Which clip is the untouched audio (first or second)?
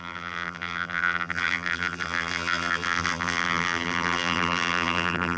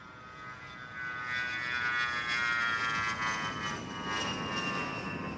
second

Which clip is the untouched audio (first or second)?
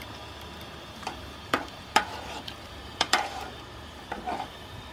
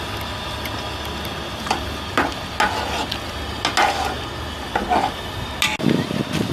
second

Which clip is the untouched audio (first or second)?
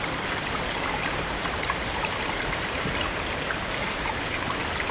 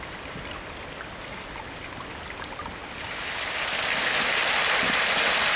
second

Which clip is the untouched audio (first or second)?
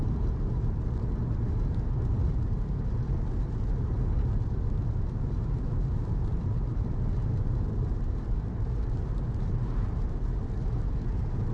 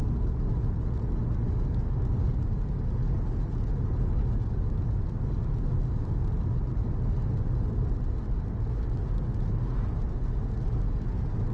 second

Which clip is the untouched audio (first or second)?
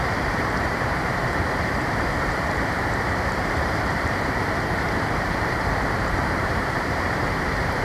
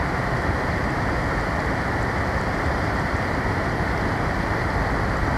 second